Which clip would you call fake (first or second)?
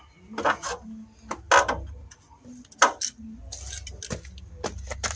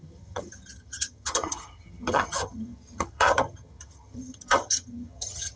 second